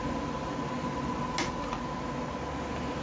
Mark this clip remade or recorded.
recorded